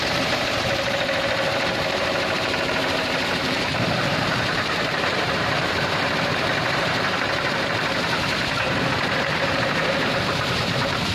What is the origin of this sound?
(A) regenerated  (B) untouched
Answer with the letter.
A